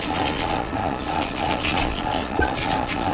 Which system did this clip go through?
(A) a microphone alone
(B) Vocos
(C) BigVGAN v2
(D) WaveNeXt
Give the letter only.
B